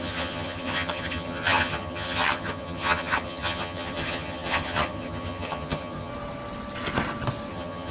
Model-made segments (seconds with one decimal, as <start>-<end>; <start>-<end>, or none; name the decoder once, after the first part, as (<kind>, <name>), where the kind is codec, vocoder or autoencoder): 0.0-6.1 (vocoder, HiFi-GAN); 7.5-7.9